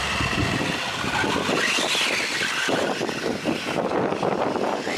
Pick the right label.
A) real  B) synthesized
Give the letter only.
A